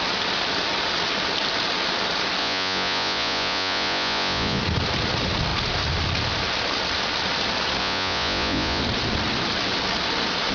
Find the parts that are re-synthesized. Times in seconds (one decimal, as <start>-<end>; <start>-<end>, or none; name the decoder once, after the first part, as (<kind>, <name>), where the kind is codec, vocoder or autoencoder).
2.4-4.6 (vocoder, Vocos); 7.8-8.8